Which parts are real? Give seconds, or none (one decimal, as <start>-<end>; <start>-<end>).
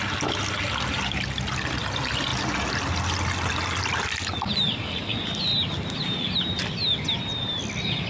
0.0-8.1